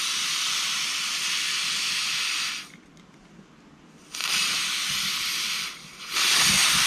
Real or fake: fake